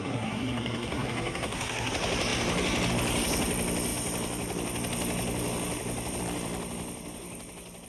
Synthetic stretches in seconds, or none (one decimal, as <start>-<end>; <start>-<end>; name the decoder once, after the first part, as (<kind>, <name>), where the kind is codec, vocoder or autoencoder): 0.0-1.9 (codec, SNAC)